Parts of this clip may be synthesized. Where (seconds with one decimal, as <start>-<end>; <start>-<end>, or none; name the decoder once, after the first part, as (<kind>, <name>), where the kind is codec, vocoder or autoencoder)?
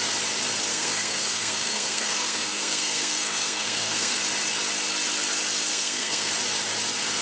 0.7-4.2 (codec, SNAC); 5.7-6.3